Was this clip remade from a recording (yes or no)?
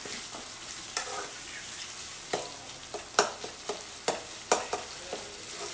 no